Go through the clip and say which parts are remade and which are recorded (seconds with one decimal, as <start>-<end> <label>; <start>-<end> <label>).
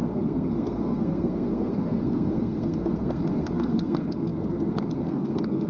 0.0-5.7 remade